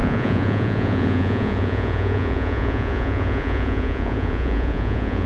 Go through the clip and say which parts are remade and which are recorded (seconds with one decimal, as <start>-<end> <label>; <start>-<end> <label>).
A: 0.0-5.3 remade